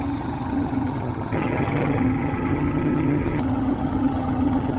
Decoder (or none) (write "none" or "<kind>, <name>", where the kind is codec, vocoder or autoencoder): vocoder, HiFi-GAN